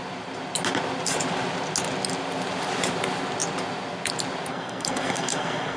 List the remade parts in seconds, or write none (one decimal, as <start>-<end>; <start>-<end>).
4.5-5.8